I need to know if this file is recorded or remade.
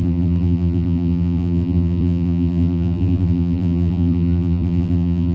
remade